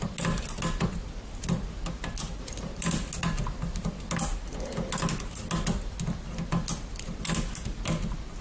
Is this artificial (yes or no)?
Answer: no